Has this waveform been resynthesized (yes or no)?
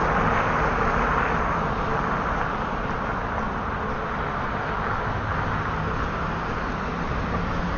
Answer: no